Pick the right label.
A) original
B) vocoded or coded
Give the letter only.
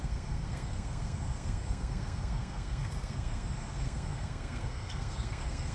B